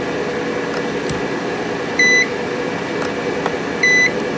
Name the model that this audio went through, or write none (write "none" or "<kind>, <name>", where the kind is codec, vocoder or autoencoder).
none